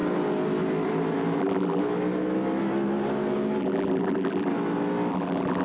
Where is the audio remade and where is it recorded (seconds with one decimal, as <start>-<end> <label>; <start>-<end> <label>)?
0.0-1.4 recorded; 1.4-1.8 remade; 1.8-3.6 recorded; 3.6-4.5 remade; 4.5-5.1 recorded; 5.1-5.6 remade